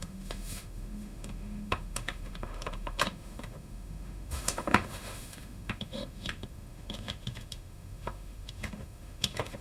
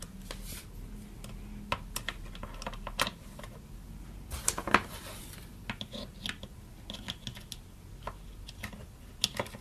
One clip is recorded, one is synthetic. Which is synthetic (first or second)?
first